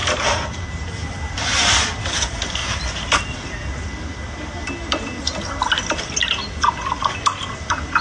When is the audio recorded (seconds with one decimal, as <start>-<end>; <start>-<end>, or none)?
2.6-6.9